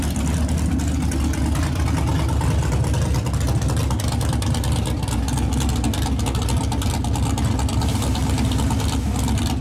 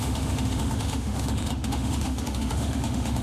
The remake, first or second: second